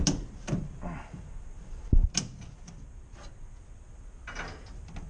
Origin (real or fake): real